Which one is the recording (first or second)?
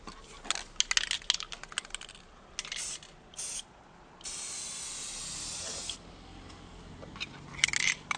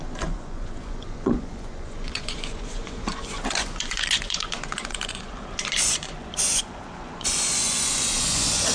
first